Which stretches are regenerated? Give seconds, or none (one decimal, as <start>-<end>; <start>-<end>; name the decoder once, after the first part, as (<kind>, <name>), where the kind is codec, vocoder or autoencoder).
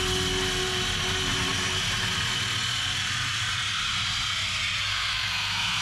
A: 4.9-5.8 (codec, SNAC)